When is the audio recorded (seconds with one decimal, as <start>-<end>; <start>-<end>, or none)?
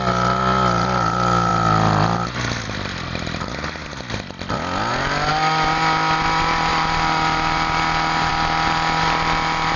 0.0-9.8